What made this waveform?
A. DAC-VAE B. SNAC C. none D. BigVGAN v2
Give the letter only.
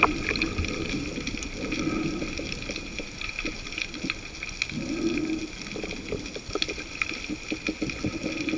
C